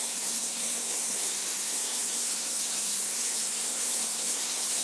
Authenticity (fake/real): fake